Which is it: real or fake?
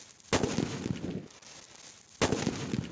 real